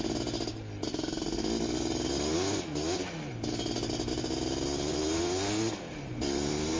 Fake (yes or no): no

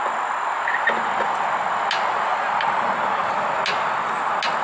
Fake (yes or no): no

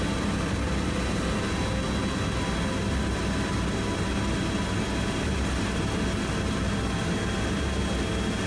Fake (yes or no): no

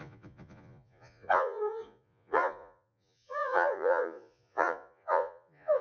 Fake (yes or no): yes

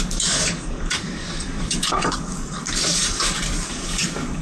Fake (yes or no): yes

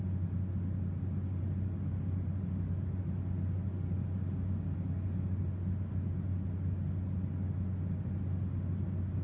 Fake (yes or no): no